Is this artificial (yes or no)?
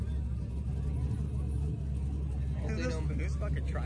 no